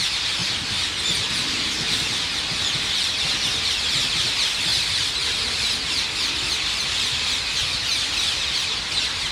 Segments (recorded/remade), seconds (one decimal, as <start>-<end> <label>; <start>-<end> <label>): 0.0-9.3 recorded